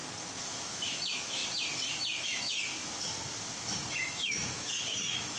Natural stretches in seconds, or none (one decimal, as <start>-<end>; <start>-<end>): 0.0-0.6; 1.4-2.2; 2.7-3.9